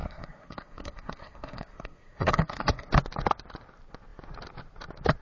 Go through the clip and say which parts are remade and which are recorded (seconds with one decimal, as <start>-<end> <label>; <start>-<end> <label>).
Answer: 0.0-2.9 remade; 2.9-5.2 recorded